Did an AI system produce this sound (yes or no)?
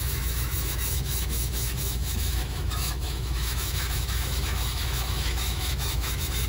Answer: yes